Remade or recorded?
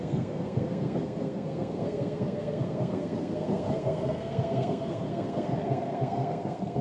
remade